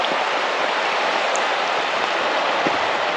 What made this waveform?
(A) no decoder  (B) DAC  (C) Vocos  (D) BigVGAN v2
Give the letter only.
D